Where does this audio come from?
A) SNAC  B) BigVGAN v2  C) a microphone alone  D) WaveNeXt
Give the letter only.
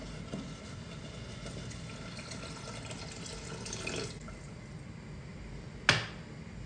C